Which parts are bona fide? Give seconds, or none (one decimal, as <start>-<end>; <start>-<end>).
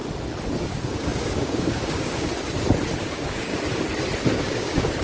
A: 0.0-0.6; 2.3-3.0; 3.5-4.3